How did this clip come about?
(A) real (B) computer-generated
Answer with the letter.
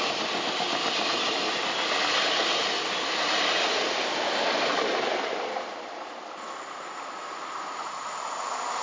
A